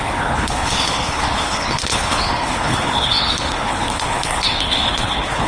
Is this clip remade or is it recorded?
remade